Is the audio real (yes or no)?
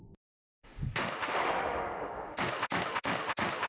no